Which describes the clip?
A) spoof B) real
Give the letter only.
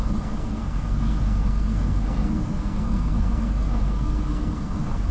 A